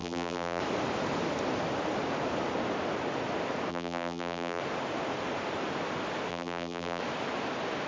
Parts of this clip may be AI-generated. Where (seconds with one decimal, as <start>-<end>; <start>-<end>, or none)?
0.0-0.6; 3.7-4.6; 6.3-7.0